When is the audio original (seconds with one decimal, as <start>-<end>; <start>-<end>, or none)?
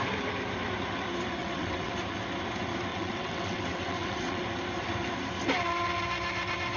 0.0-1.4; 1.9-2.9; 4.4-6.8